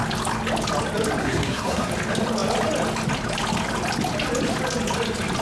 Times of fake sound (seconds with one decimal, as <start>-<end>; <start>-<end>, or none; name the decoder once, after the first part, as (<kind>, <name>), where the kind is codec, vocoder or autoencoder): 1.2-1.9 (codec, SNAC)